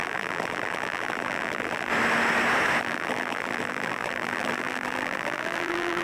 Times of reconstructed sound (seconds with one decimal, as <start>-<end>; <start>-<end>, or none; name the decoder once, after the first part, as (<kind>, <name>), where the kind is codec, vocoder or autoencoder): 0.0-1.9 (vocoder, BigVGAN v2); 2.8-6.0